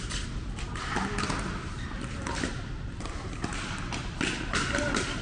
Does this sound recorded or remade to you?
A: recorded